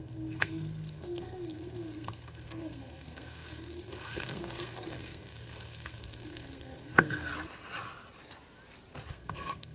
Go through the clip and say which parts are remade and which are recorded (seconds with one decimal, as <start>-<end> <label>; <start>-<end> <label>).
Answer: 0.0-7.3 remade; 7.3-9.1 recorded; 9.1-9.7 remade